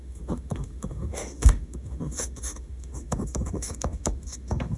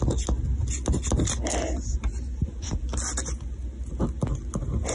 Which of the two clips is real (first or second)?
second